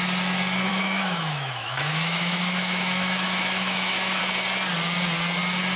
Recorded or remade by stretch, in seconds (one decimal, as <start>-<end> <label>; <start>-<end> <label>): 0.0-0.7 recorded; 0.7-4.2 remade; 4.2-5.8 recorded